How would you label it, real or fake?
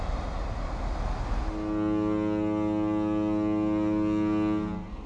real